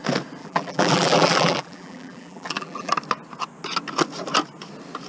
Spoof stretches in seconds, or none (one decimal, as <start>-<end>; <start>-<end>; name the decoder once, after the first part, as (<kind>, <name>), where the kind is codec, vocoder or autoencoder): 0.4-2.9 (vocoder, BigVGAN v2)